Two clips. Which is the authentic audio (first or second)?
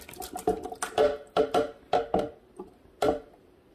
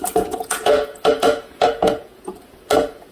first